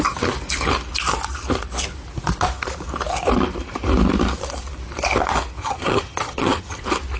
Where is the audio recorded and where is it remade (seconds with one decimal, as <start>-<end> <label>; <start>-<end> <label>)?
0.0-5.6 recorded; 5.6-6.8 remade; 6.8-7.2 recorded